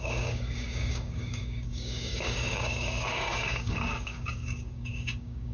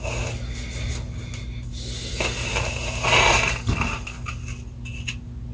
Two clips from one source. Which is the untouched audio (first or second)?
second